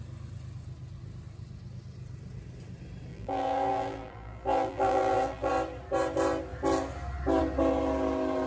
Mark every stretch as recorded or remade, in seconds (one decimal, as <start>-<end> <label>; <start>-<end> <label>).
0.0-3.1 recorded; 3.1-5.5 remade; 5.5-8.5 recorded